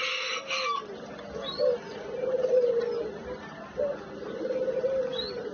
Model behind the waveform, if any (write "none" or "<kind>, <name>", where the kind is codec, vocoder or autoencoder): none